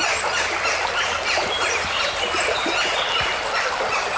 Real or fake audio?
real